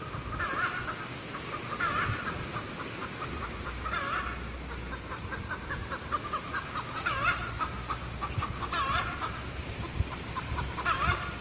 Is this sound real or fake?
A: real